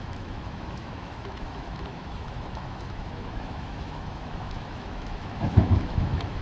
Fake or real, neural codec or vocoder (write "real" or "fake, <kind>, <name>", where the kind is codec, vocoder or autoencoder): fake, autoencoder, DAC-VAE